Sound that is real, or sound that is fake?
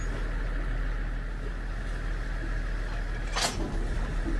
real